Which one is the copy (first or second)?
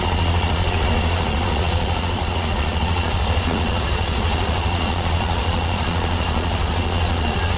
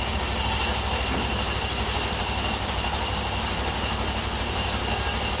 first